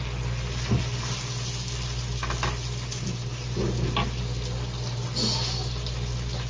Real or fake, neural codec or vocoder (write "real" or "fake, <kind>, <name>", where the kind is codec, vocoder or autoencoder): real